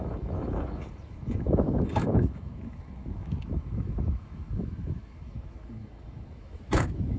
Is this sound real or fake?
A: fake